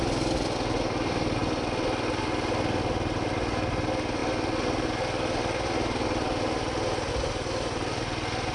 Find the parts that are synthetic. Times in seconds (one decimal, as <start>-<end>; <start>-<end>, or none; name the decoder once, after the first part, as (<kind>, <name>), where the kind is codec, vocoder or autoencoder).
none